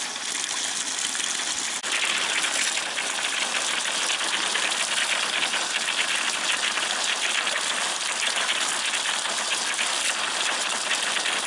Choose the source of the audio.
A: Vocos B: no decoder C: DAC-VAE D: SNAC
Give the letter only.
B